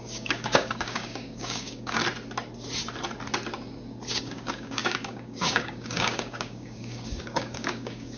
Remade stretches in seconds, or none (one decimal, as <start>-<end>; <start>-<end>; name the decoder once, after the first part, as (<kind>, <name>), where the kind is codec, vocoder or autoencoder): 0.0-2.0 (codec, DAC); 4.1-8.2